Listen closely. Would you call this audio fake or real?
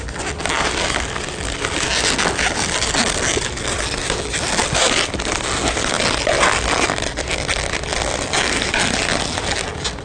real